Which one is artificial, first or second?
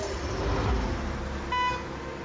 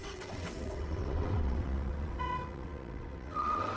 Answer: second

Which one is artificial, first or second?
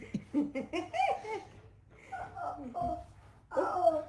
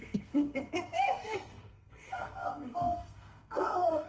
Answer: second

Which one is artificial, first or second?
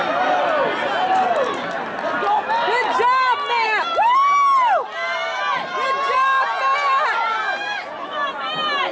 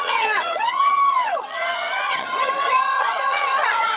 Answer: second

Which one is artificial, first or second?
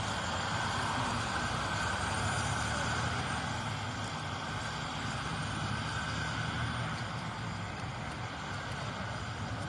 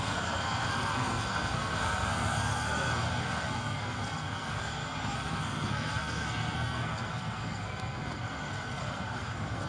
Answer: second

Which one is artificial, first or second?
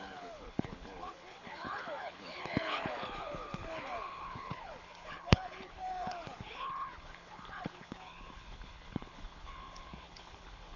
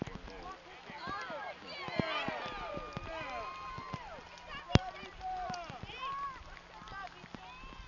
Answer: first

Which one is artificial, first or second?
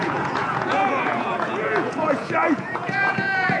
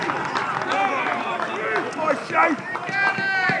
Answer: first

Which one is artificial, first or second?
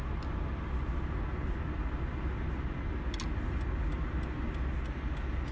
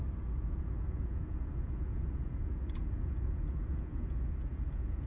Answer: second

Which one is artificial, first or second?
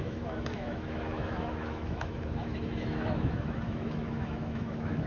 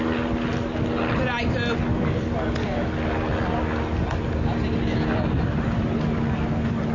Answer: first